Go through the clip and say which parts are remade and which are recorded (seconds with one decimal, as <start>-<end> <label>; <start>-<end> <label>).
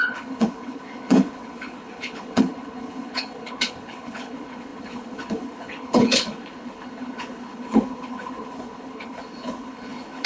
0.0-10.3 remade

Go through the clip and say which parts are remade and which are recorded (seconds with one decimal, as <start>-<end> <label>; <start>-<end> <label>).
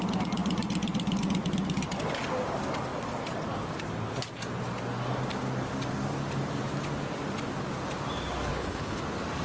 0.0-8.5 recorded; 8.5-9.0 remade; 9.0-9.4 recorded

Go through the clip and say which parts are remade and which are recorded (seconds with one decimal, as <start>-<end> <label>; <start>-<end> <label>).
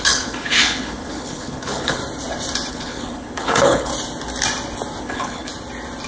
0.0-2.0 remade; 2.0-2.7 recorded; 2.7-3.9 remade; 3.9-5.0 recorded; 5.0-5.5 remade; 5.5-6.1 recorded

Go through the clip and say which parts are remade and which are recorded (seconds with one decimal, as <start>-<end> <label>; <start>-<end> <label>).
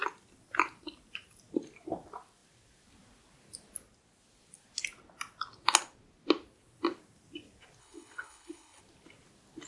0.0-7.8 recorded; 7.8-8.8 remade; 8.8-9.7 recorded